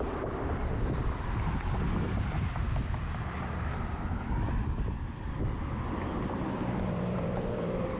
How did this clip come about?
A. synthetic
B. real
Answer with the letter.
A